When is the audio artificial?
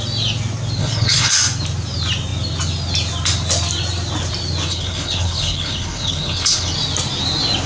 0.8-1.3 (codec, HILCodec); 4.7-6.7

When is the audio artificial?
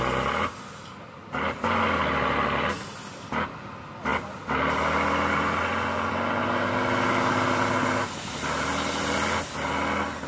none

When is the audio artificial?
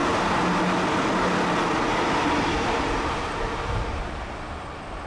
none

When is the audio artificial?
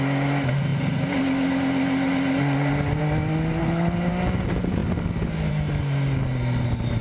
3.6-4.1 (codec, HILCodec)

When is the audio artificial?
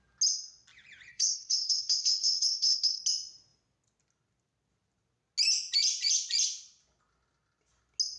1.1-3.0 (codec, HILCodec)